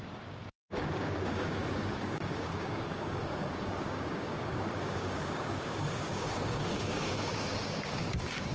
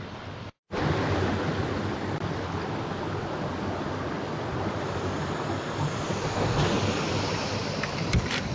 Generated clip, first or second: first